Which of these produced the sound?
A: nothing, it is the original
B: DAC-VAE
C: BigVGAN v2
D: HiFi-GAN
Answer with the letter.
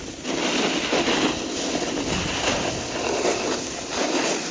A